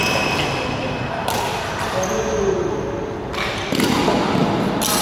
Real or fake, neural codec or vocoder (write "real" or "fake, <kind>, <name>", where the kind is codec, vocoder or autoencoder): real